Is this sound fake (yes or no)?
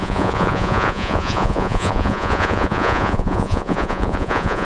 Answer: yes